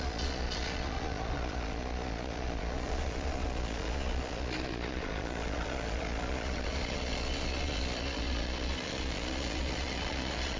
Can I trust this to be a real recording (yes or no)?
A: no